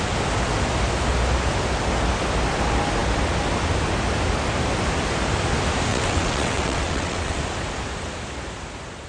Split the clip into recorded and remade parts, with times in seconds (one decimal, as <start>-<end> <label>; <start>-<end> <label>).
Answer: 0.0-5.9 recorded; 5.9-7.4 remade; 7.4-9.1 recorded